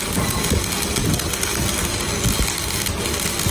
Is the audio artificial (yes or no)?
no